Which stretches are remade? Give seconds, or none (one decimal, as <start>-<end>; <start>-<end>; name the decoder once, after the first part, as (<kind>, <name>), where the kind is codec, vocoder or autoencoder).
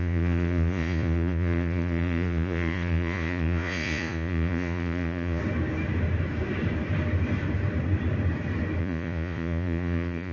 0.0-5.4 (vocoder, Vocos); 8.8-10.3